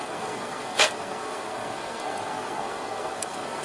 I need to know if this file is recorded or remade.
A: remade